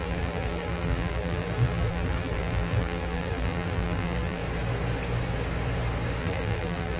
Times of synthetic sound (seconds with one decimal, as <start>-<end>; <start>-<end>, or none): 0.0-4.4; 6.2-7.0

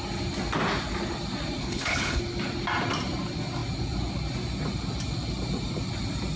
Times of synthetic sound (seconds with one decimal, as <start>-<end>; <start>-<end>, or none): 1.6-2.2

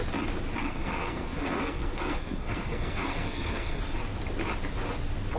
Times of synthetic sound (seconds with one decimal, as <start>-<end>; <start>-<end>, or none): 0.6-3.8

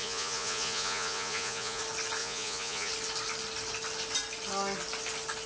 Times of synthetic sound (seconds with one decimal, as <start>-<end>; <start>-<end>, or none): 0.0-1.8; 2.2-2.9

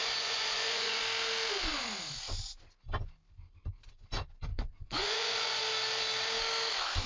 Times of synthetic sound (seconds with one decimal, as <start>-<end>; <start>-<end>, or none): 0.0-1.0; 4.5-5.6

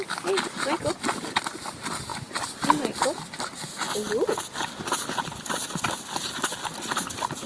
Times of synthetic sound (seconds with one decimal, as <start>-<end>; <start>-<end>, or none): none

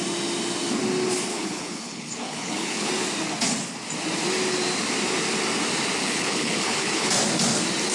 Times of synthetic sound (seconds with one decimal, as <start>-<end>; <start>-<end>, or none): 1.3-2.9; 6.0-7.1